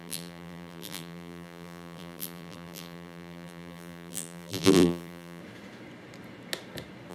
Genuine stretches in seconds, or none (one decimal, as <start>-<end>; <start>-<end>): 5.4-7.1